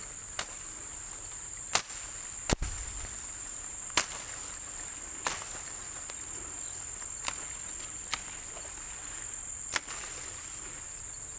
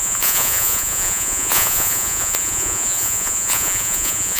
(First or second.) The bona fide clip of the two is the first